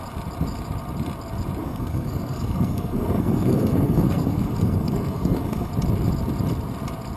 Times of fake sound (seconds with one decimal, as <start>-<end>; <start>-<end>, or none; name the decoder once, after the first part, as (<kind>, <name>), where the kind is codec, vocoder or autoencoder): 1.6-5.7 (codec, SNAC)